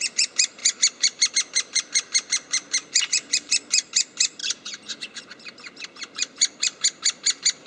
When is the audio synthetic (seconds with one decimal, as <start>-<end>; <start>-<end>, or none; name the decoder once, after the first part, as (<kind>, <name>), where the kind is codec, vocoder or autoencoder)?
0.0-7.7 (vocoder, BigVGAN v2)